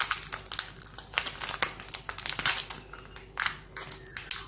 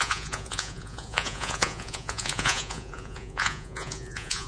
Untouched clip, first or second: first